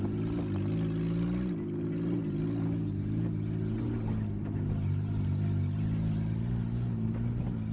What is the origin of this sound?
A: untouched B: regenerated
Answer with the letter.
A